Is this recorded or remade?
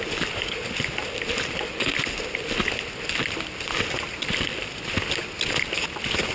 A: recorded